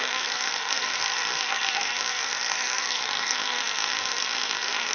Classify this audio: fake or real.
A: fake